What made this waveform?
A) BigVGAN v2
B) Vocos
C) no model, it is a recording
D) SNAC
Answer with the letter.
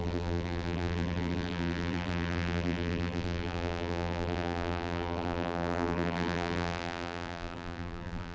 A